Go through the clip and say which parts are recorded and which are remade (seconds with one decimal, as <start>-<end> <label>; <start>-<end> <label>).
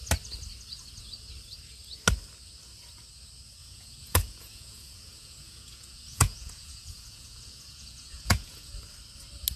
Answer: 0.0-3.6 recorded; 3.6-8.7 remade; 8.7-9.6 recorded